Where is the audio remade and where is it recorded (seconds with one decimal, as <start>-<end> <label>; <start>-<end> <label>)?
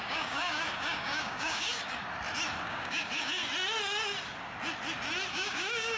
0.0-1.8 remade; 1.8-2.7 recorded; 2.7-3.4 remade; 3.4-5.3 recorded; 5.3-6.0 remade